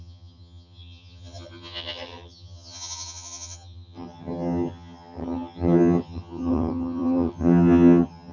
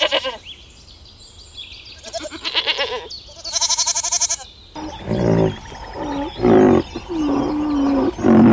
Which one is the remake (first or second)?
first